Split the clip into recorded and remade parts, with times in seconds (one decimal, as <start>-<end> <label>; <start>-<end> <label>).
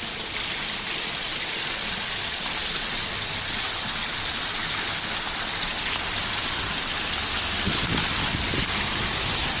0.0-9.6 recorded